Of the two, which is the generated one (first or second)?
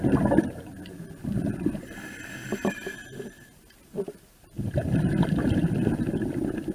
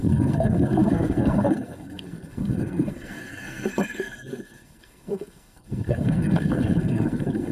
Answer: second